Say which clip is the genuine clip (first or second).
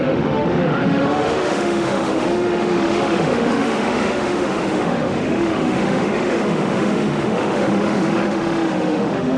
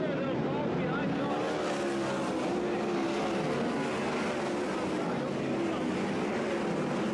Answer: second